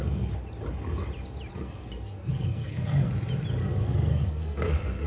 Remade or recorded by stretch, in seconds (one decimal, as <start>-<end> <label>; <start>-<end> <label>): 0.0-1.5 recorded; 1.5-3.1 remade; 3.1-3.6 recorded; 3.6-5.1 remade